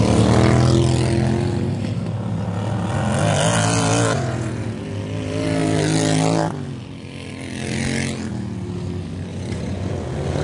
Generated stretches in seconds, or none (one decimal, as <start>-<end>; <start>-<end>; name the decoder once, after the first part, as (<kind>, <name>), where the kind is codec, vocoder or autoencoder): 9.3-9.9 (vocoder, Vocos)